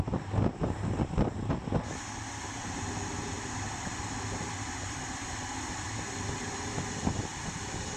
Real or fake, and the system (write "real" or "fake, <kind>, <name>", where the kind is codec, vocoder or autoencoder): real